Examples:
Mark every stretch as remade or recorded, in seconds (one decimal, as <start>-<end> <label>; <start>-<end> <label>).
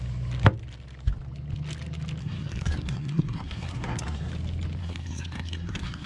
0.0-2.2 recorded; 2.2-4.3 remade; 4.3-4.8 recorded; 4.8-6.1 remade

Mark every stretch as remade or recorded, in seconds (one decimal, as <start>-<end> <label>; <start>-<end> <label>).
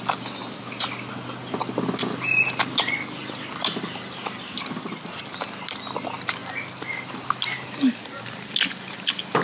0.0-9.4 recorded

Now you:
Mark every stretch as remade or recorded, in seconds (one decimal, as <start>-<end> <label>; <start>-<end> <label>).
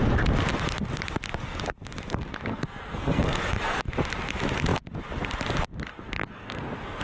0.0-2.5 recorded; 2.5-3.8 remade; 3.8-5.9 recorded; 5.9-7.0 remade